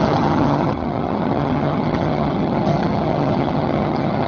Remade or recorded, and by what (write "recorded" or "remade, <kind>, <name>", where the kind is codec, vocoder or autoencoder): remade, vocoder, HiFi-GAN